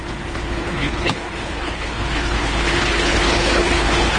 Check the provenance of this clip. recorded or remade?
remade